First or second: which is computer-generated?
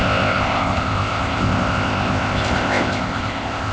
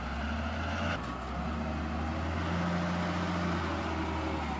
first